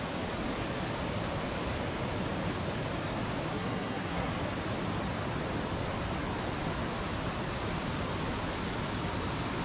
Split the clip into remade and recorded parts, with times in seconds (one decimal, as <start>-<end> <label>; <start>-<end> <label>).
0.0-3.5 recorded; 3.5-4.3 remade; 4.3-9.6 recorded